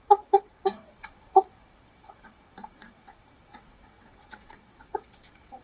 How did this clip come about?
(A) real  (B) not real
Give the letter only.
B